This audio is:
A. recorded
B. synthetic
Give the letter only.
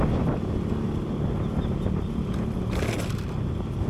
A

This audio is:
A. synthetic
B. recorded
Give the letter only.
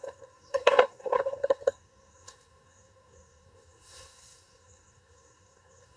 A